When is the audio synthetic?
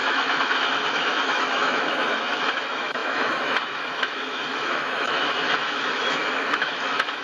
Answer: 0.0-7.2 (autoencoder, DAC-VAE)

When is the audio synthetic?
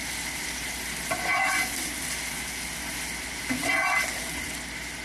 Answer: none